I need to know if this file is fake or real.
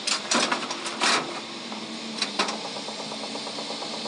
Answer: real